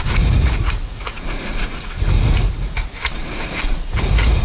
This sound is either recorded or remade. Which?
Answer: remade